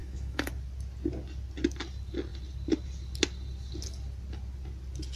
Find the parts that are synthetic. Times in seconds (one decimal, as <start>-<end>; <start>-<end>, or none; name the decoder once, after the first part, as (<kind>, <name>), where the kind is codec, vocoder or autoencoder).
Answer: 0.0-0.5 (autoencoder, DAC-VAE)